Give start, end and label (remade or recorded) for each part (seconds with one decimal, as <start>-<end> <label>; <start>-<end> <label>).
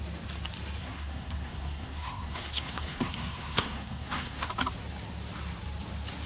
0.0-0.8 recorded; 0.8-4.5 remade; 4.5-6.3 recorded